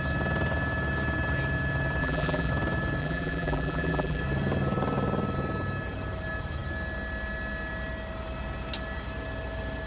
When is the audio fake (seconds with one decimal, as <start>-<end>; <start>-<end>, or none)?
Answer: 2.0-2.5; 3.0-4.2